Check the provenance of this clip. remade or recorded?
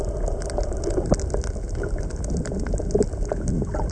recorded